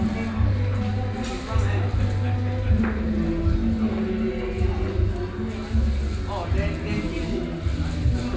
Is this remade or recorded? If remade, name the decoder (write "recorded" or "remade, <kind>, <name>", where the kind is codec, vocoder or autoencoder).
recorded